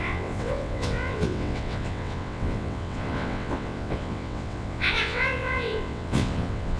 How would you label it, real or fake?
fake